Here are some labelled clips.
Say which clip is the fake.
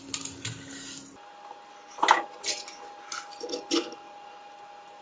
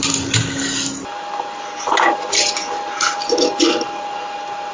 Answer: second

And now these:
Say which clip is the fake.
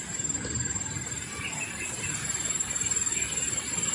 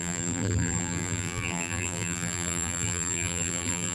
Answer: second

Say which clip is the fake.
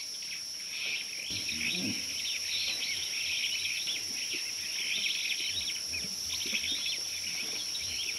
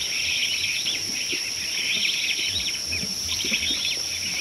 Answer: second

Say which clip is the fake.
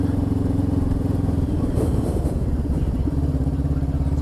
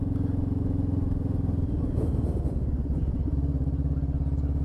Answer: first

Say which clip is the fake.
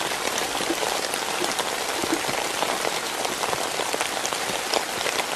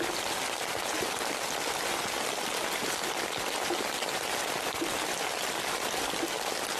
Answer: first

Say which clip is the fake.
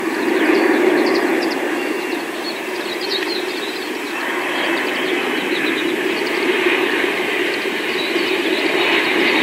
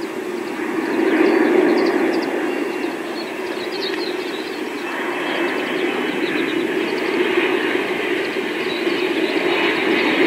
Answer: first